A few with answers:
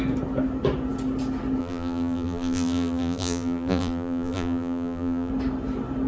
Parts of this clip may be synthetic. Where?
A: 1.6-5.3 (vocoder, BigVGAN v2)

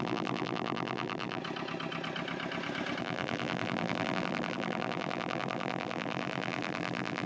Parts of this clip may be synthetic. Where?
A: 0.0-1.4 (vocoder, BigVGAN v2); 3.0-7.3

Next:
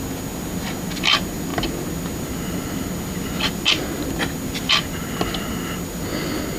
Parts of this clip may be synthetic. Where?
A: none